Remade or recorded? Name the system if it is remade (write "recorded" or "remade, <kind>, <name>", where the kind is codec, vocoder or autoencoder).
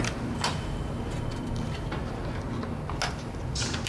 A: recorded